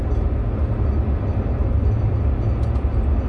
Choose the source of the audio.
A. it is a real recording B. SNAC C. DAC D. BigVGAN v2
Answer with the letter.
A